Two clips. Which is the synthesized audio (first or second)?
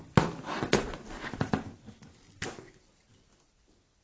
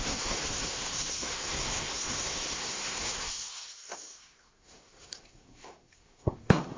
second